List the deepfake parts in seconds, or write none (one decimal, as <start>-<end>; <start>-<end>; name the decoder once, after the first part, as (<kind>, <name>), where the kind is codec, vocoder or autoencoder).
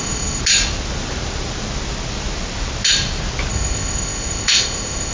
0.0-0.4 (codec, ZipCodec); 3.5-5.1